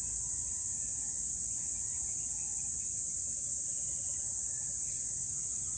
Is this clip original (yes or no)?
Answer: yes